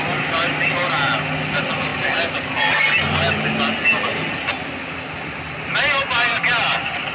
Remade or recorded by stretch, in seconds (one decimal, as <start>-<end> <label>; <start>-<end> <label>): 0.0-7.1 recorded